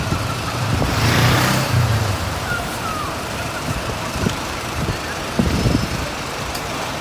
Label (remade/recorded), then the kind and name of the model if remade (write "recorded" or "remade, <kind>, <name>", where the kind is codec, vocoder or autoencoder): remade, vocoder, BigVGAN v2